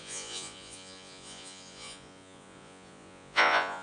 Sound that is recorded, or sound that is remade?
remade